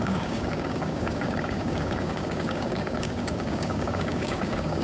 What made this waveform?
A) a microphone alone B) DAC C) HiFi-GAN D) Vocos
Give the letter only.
B